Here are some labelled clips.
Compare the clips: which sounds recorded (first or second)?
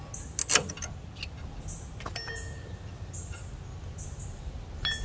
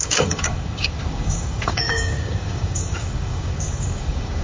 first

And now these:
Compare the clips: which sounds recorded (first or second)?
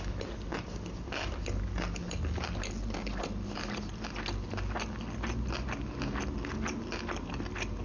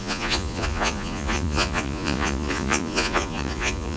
first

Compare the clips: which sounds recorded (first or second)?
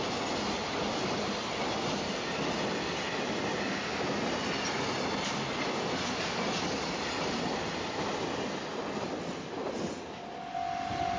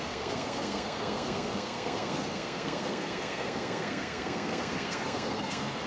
first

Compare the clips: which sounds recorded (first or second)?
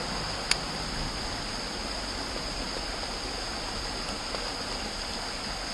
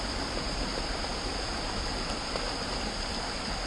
first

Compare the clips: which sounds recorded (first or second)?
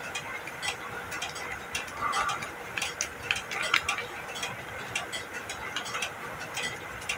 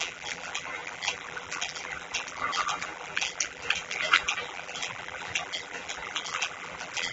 first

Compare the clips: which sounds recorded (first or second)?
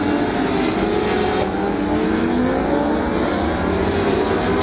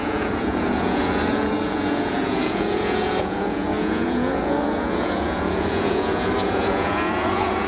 first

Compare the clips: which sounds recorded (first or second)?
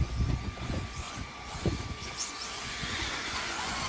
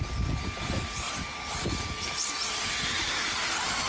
second